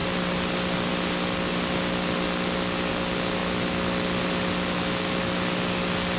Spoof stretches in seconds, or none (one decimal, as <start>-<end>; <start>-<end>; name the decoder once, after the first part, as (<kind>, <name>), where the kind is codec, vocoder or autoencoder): none